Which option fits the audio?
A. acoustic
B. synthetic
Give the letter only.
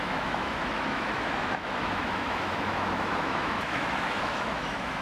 B